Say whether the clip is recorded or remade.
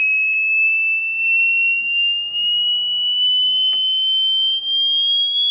recorded